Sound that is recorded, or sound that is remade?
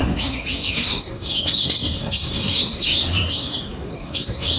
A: remade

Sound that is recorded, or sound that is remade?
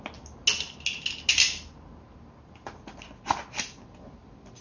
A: recorded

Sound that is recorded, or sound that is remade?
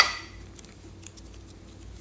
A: recorded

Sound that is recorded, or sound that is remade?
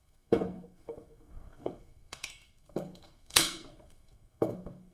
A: remade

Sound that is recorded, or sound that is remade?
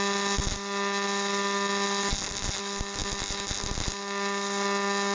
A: recorded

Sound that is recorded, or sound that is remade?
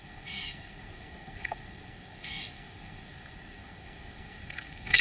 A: remade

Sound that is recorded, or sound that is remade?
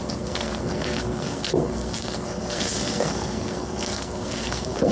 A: remade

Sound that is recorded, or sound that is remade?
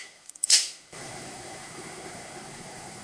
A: remade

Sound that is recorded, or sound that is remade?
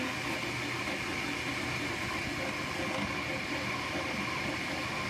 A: recorded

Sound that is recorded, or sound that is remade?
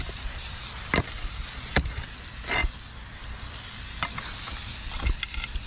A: recorded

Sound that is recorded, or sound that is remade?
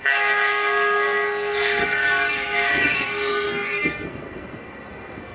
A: remade